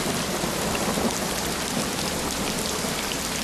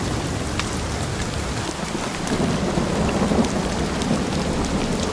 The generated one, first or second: second